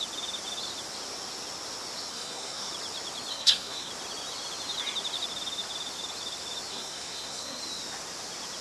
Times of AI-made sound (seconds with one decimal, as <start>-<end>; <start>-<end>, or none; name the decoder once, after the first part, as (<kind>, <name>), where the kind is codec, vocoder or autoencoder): 2.1-2.7 (codec, SNAC); 3.3-3.9; 6.7-7.6